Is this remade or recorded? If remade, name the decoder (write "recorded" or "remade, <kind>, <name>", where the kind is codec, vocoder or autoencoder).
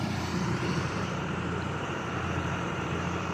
remade, vocoder, BigVGAN v2